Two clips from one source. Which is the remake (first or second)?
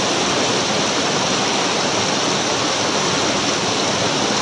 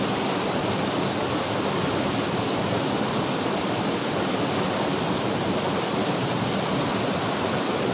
first